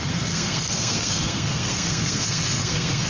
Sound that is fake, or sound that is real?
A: fake